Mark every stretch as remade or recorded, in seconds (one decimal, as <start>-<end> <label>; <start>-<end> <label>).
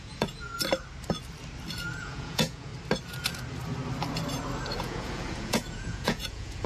0.0-0.5 remade; 0.5-2.0 recorded; 2.0-2.7 remade; 2.7-4.8 recorded; 4.8-6.7 remade